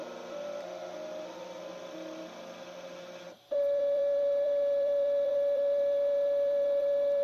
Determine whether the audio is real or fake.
fake